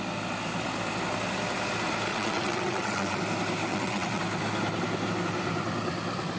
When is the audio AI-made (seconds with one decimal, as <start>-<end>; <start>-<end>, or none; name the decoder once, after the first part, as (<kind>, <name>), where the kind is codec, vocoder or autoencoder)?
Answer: 2.1-3.2 (vocoder, WaveNeXt); 3.7-4.2